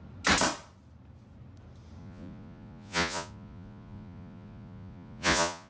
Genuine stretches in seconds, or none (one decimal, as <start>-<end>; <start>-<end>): 0.0-2.0